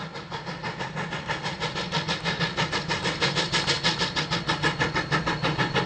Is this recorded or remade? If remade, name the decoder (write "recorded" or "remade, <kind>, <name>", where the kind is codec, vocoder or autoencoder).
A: recorded